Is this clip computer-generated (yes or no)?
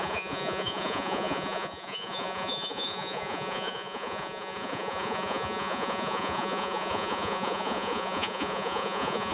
yes